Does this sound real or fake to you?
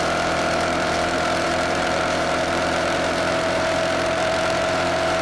fake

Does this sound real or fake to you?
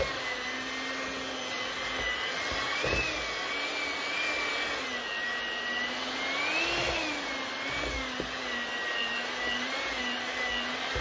real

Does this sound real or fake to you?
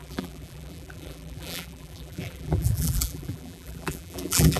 fake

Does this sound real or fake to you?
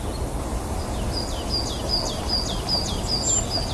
real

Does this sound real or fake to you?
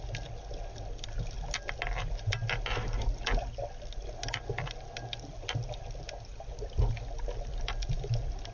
real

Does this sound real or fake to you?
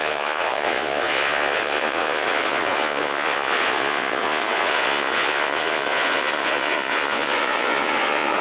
fake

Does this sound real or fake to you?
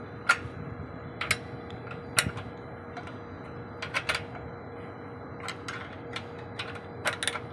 real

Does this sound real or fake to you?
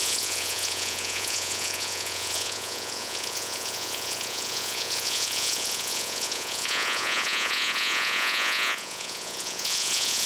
fake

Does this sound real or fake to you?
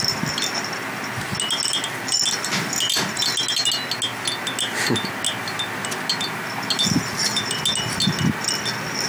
real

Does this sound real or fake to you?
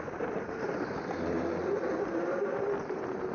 real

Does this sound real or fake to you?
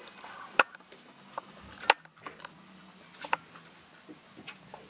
real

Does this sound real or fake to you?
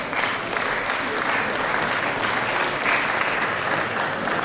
real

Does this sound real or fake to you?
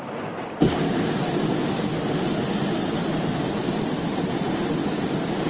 real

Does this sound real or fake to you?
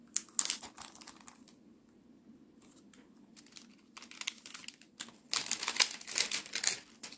real